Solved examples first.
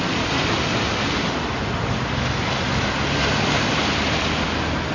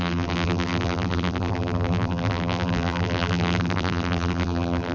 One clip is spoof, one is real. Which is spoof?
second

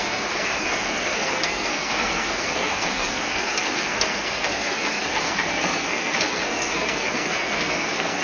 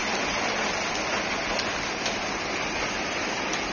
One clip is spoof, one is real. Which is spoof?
first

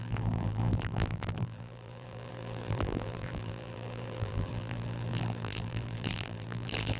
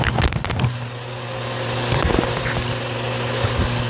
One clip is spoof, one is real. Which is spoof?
first